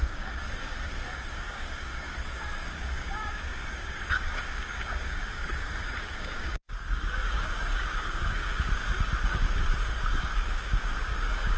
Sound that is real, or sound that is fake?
fake